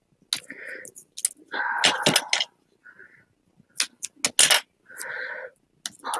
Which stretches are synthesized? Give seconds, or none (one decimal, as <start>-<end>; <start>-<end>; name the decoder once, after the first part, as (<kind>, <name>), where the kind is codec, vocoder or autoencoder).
none